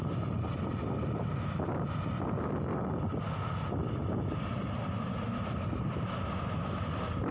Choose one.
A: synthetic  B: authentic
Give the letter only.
B